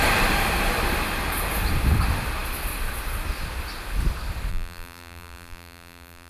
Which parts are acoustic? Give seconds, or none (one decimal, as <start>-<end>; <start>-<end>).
0.0-4.5

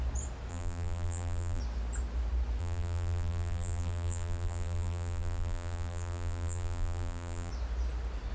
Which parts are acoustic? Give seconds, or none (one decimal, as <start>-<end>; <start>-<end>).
0.0-0.5; 1.6-2.6; 7.5-8.3

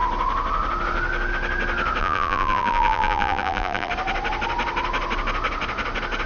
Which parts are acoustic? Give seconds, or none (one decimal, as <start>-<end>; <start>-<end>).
0.0-2.0; 3.9-6.3

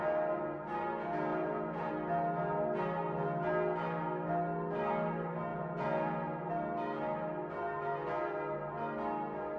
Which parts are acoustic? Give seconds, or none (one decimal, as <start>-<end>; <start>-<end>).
0.0-1.3; 1.9-5.5; 6.5-9.6

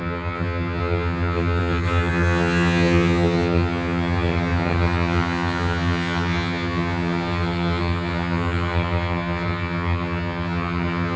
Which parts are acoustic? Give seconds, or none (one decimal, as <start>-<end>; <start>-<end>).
none

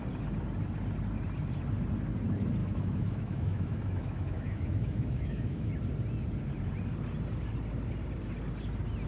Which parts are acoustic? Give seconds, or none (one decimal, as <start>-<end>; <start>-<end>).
0.0-2.6; 5.7-9.1

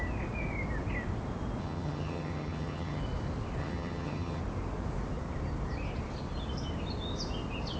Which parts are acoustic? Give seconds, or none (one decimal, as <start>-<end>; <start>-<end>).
0.0-1.6; 3.0-3.6; 4.4-7.8

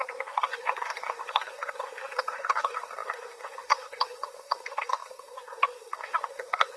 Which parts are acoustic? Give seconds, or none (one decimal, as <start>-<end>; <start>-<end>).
none